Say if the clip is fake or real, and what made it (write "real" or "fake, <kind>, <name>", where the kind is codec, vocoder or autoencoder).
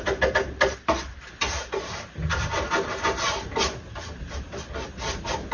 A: real